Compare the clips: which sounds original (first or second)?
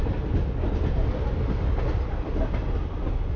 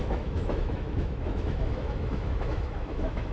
first